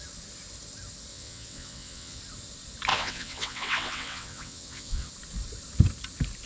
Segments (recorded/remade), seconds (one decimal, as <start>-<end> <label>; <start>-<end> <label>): 0.0-1.1 recorded; 1.1-2.2 remade; 2.2-2.9 recorded; 2.9-5.1 remade; 5.1-6.5 recorded